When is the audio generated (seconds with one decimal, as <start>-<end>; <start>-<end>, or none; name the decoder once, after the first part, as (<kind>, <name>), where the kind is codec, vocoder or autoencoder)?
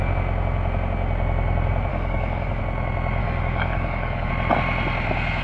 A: 1.9-2.6 (codec, DAC); 3.2-4.3